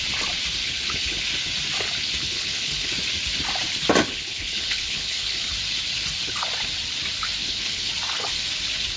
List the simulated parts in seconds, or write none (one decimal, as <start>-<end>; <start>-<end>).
0.6-1.2; 2.2-2.9; 4.1-5.5; 7.4-7.9